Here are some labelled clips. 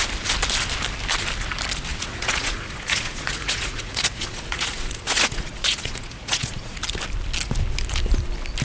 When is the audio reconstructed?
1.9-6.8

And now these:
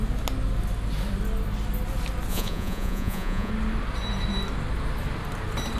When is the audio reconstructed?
2.3-3.5

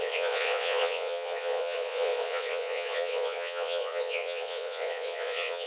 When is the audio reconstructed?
0.0-5.7

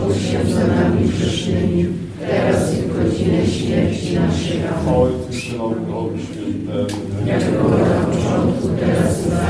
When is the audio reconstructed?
none

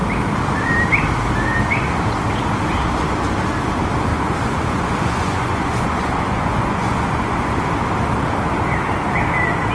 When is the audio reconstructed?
4.1-7.5

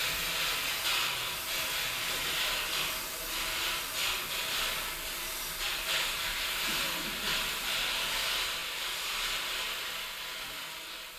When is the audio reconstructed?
none